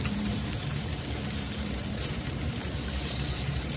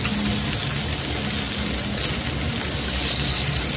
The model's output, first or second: first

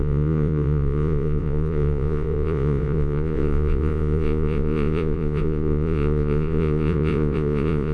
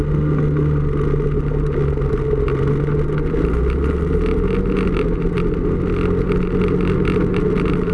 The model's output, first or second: first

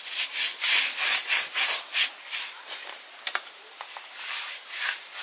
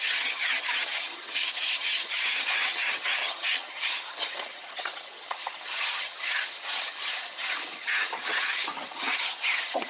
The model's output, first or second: second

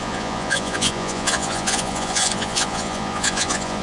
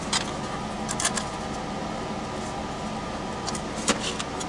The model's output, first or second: first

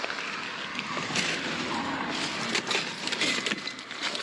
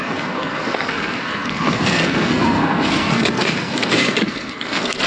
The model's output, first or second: second